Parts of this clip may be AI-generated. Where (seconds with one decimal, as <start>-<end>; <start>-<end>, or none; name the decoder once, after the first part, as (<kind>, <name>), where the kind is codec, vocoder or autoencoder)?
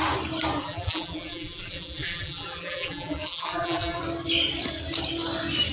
0.6-4.0 (vocoder, BigVGAN v2)